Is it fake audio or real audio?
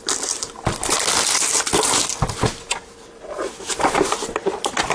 real